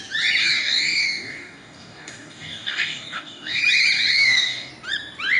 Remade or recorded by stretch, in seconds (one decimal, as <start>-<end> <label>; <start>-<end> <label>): 0.0-0.4 recorded; 0.4-3.6 remade; 3.6-4.1 recorded; 4.1-4.7 remade; 4.7-5.4 recorded